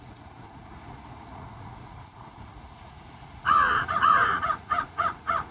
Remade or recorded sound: remade